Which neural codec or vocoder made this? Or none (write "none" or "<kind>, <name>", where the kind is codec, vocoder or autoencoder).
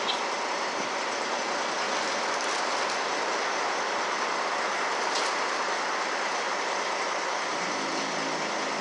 none